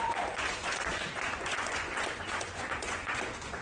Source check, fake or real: fake